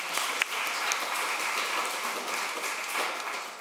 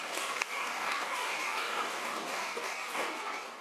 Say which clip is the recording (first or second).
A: first